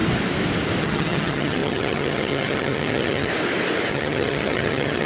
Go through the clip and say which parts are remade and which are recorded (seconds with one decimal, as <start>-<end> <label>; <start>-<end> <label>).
0.0-0.8 recorded; 0.8-3.3 remade; 3.3-3.9 recorded; 3.9-5.1 remade